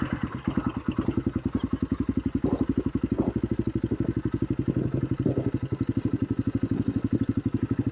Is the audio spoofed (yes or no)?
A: no